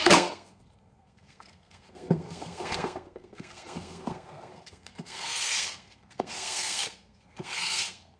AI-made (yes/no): yes